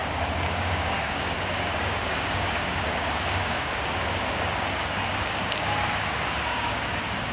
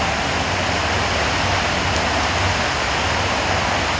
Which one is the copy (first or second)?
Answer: first